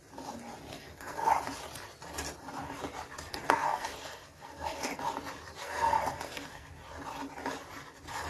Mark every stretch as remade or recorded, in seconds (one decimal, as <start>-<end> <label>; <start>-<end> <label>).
0.0-0.7 recorded; 0.7-1.3 remade; 1.3-3.3 recorded; 3.3-5.0 remade; 5.0-5.6 recorded; 5.6-6.7 remade; 6.7-8.3 recorded